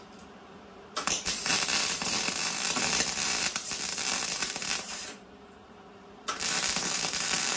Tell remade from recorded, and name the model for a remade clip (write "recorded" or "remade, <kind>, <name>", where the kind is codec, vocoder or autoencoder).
remade, vocoder, BigVGAN v2